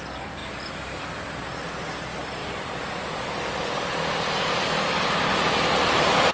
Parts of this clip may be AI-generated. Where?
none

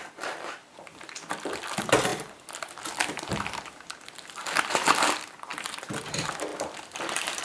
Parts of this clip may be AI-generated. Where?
0.0-7.4 (vocoder, BigVGAN v2)

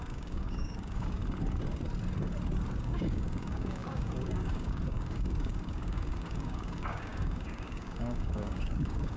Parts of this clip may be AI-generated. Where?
0.0-1.2 (codec, DAC); 2.8-9.2

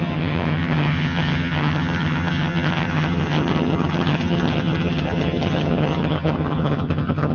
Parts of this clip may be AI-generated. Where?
0.0-7.3 (vocoder, HiFi-GAN)

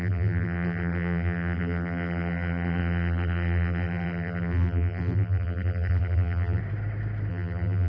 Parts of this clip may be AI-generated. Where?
0.0-6.6 (vocoder, BigVGAN v2); 7.3-7.9

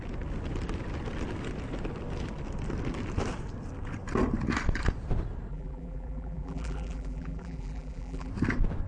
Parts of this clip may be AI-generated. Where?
5.5-8.3 (vocoder, BigVGAN v2)

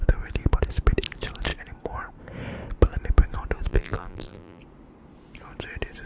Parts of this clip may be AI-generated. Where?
3.7-4.6 (vocoder, BigVGAN v2)